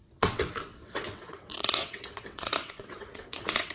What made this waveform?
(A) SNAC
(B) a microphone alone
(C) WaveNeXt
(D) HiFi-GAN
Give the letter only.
C